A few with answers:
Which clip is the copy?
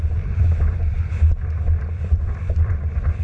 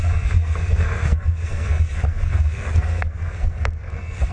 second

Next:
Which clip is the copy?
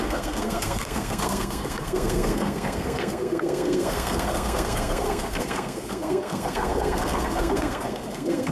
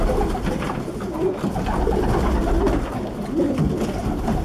first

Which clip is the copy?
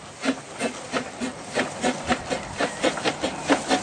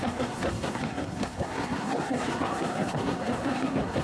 second